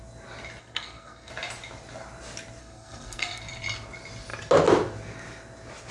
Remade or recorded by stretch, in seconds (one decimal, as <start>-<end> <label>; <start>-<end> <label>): 0.0-0.6 recorded; 0.6-1.3 remade; 1.3-2.6 recorded; 2.6-3.4 remade; 3.4-5.9 recorded

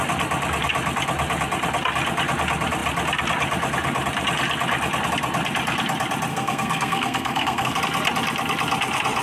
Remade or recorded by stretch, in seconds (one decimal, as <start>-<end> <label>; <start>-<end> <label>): 0.0-6.3 recorded; 6.3-7.8 remade; 7.8-9.2 recorded

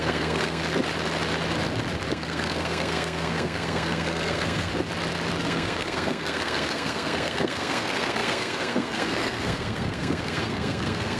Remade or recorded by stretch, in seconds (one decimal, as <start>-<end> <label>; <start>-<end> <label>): 0.0-0.6 remade; 0.6-2.1 recorded; 2.1-4.7 remade; 4.7-5.4 recorded; 5.4-11.2 remade

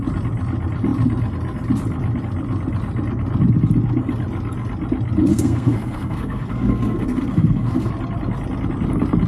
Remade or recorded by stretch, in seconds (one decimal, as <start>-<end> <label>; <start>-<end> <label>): 0.0-5.3 recorded; 5.3-7.9 remade; 7.9-9.3 recorded